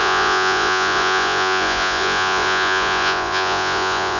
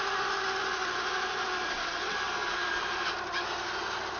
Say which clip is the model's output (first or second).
first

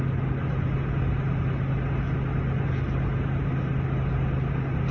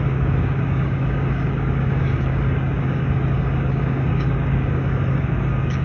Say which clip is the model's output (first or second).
second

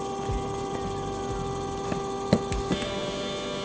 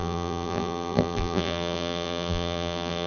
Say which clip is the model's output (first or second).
second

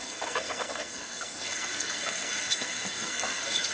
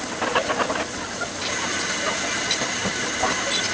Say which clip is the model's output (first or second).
first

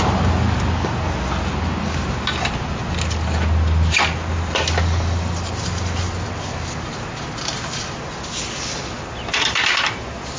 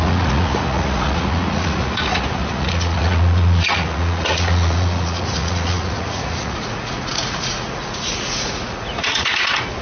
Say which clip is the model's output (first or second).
second